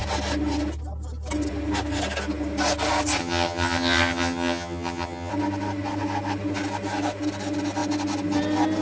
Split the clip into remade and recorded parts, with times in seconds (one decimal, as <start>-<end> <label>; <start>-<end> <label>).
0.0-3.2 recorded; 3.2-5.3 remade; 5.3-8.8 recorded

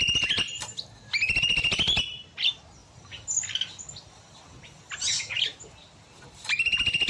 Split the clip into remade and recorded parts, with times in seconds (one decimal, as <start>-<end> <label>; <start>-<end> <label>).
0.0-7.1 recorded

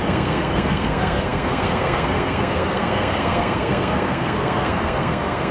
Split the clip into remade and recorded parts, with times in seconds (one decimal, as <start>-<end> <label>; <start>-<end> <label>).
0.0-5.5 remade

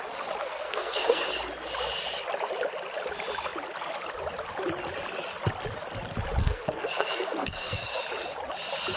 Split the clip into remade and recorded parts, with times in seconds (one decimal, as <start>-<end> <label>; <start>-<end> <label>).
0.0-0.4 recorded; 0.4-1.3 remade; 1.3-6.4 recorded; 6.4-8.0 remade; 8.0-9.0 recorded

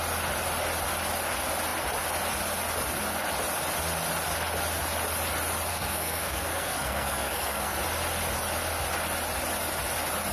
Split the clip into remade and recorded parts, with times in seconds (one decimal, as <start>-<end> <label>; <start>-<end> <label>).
0.0-5.7 recorded; 5.7-7.8 remade; 7.8-10.3 recorded

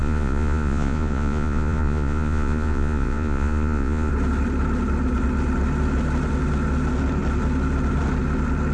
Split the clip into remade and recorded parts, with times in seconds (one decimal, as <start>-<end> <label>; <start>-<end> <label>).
0.0-4.1 remade; 4.1-8.7 recorded

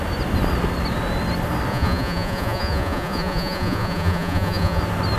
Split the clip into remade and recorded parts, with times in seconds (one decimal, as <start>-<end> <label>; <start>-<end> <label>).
0.0-1.7 recorded; 1.7-4.8 remade; 4.8-5.2 recorded